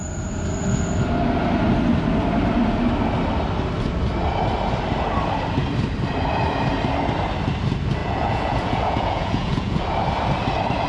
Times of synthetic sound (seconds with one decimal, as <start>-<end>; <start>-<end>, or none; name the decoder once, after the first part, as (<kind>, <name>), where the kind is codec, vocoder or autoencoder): 8.0-9.8 (vocoder, Vocos)